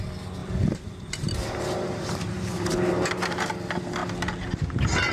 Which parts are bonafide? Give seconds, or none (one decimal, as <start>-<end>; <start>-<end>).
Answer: 0.0-0.4; 3.5-5.1